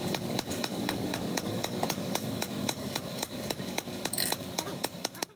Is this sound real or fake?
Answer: fake